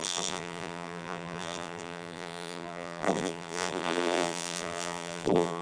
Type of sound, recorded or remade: remade